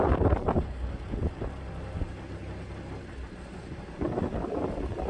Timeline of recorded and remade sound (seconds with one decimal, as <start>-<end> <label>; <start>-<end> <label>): 0.0-5.1 recorded